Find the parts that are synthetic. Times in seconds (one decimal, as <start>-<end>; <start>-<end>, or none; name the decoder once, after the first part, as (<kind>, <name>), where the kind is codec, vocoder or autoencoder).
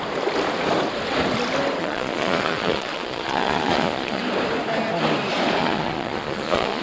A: 1.8-4.2 (vocoder, Vocos); 5.6-6.8